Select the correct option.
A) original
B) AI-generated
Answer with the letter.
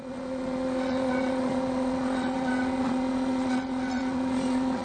B